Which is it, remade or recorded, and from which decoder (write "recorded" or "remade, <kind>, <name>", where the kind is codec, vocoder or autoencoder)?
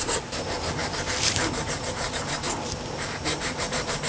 remade, vocoder, BigVGAN v2